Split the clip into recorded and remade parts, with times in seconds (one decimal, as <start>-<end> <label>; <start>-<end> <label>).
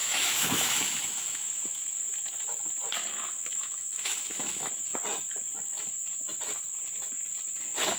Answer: 0.0-1.5 remade; 1.5-3.1 recorded; 3.1-4.7 remade; 4.7-8.0 recorded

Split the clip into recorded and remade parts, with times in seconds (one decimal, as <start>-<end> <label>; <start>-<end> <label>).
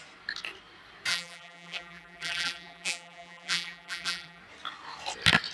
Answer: 0.0-1.1 recorded; 1.1-4.4 remade; 4.4-5.5 recorded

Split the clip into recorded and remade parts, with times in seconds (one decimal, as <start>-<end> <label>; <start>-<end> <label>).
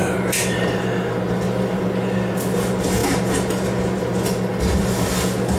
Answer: 0.0-5.6 recorded